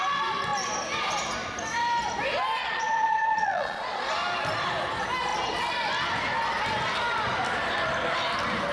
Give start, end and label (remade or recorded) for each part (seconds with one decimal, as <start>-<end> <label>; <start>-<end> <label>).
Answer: 0.0-2.6 recorded; 2.6-4.1 remade; 4.1-8.7 recorded